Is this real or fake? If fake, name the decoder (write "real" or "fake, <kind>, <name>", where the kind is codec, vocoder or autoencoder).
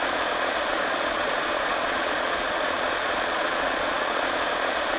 fake, vocoder, Vocos